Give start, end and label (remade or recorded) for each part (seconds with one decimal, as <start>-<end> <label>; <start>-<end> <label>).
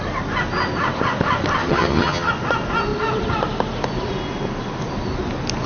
0.0-1.6 recorded; 1.6-2.3 remade; 2.3-5.7 recorded